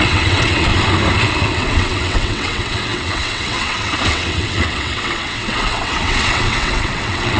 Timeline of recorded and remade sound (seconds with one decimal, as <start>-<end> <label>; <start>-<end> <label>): 0.0-0.7 remade; 0.7-1.2 recorded; 1.2-7.4 remade